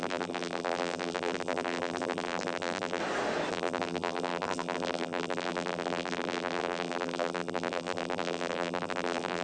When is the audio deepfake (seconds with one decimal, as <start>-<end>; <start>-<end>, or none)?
0.0-3.0; 3.5-9.4